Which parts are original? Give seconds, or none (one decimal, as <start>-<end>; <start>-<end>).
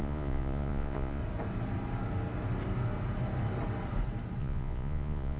1.2-4.4